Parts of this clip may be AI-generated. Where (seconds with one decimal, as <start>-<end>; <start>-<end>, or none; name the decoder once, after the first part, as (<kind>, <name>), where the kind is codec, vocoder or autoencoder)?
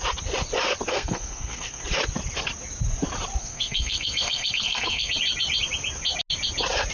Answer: 0.9-1.8 (codec, SNAC); 3.4-5.1